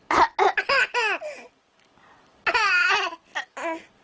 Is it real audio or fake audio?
real